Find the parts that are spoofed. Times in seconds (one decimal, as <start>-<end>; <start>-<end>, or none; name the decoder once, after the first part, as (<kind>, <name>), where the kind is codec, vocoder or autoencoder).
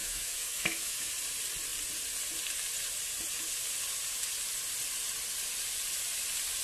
0.0-1.1 (autoencoder, DAC-VAE)